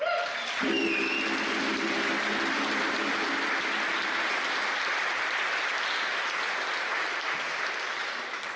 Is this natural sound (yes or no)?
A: yes